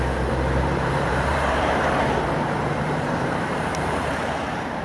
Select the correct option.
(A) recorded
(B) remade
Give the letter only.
B